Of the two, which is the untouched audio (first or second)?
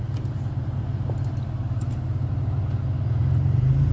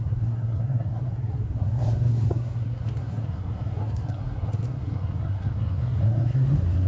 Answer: first